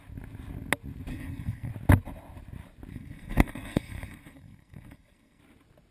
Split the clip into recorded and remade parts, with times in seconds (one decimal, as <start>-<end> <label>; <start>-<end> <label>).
0.0-1.1 recorded; 1.1-1.7 remade; 1.7-2.9 recorded; 2.9-5.4 remade; 5.4-5.9 recorded